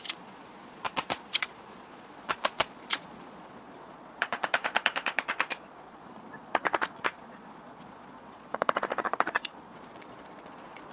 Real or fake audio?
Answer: fake